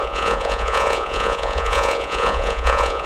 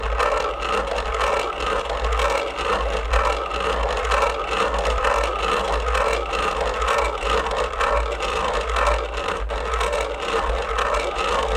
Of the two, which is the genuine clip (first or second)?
second